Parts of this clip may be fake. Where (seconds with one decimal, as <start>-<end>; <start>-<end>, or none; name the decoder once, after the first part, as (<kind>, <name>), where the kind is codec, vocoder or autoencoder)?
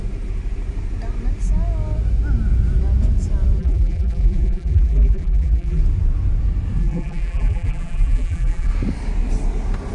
3.6-5.8 (vocoder, BigVGAN v2); 6.8-8.7